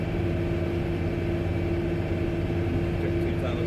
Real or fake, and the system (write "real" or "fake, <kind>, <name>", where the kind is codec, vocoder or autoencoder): real